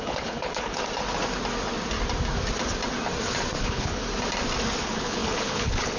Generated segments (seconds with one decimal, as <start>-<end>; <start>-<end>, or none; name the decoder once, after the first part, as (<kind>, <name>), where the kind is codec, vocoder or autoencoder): 0.0-0.8 (codec, HILCodec); 3.6-4.0; 4.8-6.0